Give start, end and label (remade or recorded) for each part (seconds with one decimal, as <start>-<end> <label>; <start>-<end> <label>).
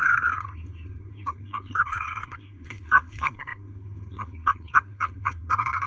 0.0-5.9 remade